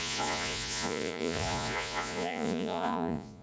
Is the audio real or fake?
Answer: fake